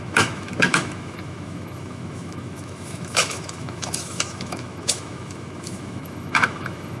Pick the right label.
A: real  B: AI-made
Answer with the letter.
B